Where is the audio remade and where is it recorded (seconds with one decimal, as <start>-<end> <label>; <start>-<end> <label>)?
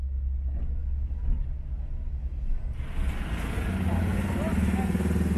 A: 0.0-5.4 recorded